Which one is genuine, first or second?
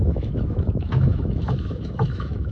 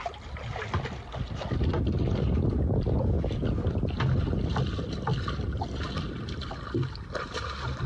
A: second